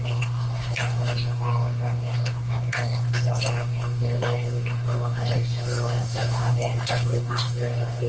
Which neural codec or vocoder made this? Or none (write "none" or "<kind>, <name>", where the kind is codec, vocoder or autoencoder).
codec, SNAC